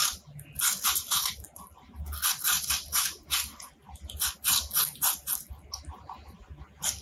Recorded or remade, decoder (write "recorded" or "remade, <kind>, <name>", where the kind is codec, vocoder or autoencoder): recorded